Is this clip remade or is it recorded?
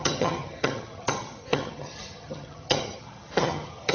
remade